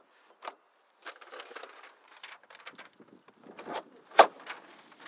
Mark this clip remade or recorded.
recorded